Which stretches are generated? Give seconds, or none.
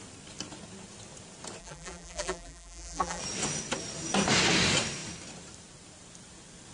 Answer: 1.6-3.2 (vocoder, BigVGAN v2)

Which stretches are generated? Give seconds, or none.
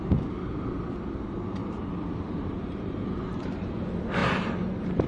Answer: 1.6-3.7 (vocoder, BigVGAN v2); 4.2-5.1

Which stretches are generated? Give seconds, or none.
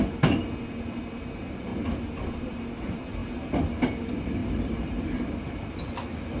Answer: 1.7-2.5 (vocoder, BigVGAN v2); 3.2-3.8; 4.4-5.8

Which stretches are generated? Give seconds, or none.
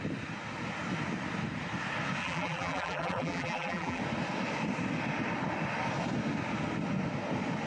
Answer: 2.2-4.0 (vocoder, BigVGAN v2)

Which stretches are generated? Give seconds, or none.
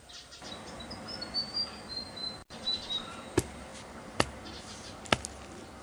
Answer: 2.4-3.1 (vocoder, BigVGAN v2)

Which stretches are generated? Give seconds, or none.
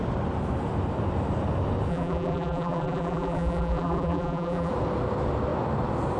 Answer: 1.9-4.7 (vocoder, BigVGAN v2)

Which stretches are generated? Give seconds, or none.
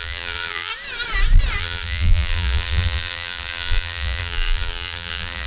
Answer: 0.0-0.7 (vocoder, BigVGAN v2); 1.6-5.5